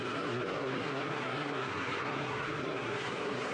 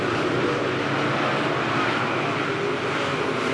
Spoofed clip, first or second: first